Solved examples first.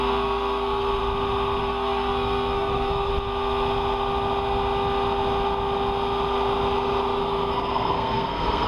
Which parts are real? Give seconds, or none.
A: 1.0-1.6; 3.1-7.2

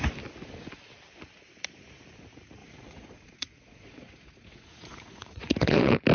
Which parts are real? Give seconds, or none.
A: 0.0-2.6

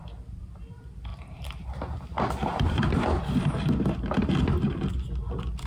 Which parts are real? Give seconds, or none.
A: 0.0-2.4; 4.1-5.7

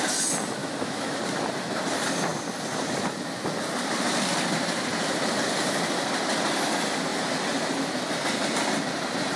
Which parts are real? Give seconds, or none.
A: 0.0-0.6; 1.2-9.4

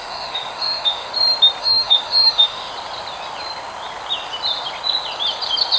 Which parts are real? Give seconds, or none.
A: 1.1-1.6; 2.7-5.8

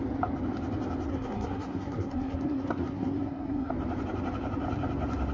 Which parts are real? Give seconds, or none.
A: 0.0-1.1; 3.7-5.3